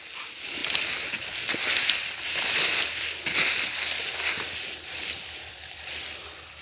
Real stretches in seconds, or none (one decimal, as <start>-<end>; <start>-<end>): 0.6-4.3